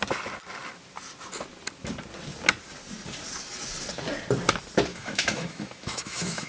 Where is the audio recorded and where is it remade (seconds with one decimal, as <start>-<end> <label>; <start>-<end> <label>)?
0.0-4.9 recorded; 4.9-6.5 remade